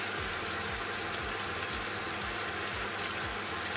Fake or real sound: real